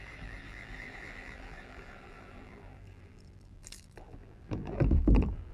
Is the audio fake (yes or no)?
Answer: yes